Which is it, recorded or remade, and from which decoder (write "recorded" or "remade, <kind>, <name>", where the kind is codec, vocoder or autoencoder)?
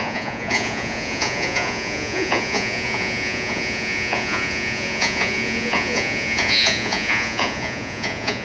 remade, vocoder, Vocos